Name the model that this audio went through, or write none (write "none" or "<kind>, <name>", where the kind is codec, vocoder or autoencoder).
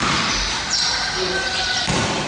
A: none